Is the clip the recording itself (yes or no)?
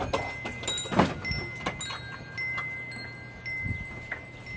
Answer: yes